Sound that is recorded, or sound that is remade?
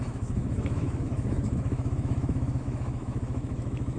remade